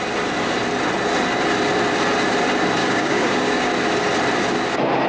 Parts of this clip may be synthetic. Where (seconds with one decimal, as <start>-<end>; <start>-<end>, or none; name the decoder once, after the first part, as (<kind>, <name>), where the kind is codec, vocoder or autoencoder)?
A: 2.8-3.7 (codec, DAC)